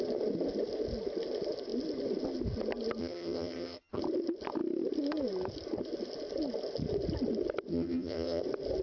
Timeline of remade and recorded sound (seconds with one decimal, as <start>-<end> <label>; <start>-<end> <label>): 0.0-3.0 recorded; 3.0-4.0 remade; 4.0-7.7 recorded; 7.7-8.4 remade; 8.4-8.8 recorded